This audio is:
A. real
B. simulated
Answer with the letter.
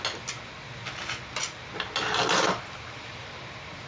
A